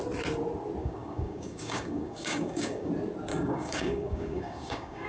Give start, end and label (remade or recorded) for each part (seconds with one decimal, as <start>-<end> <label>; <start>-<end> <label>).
0.0-0.8 recorded; 0.8-2.9 remade; 2.9-3.3 recorded; 3.3-5.1 remade